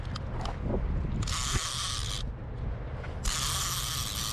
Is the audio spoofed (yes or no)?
no